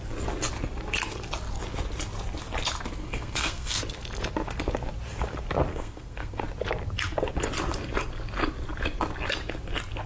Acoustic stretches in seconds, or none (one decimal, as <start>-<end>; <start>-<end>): 0.0-3.0; 3.8-5.7; 6.4-10.1